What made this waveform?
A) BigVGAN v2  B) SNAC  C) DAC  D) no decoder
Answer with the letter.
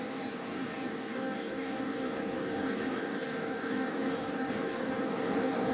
C